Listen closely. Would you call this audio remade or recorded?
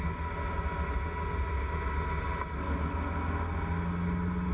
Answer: recorded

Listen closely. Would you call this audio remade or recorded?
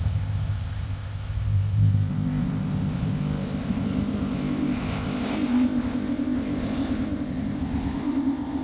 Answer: remade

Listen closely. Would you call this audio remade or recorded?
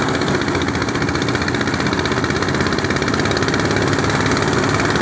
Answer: recorded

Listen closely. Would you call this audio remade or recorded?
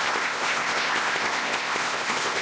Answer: remade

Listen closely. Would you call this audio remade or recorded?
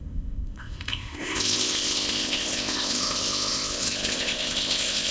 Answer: remade